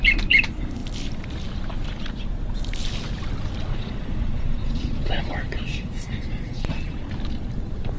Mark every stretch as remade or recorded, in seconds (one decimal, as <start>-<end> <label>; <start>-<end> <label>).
0.0-3.7 recorded; 3.7-7.1 remade; 7.1-8.0 recorded